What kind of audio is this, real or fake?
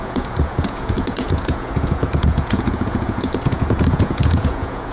fake